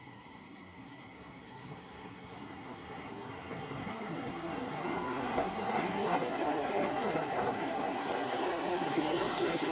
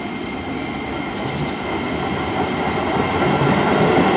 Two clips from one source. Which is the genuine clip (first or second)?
second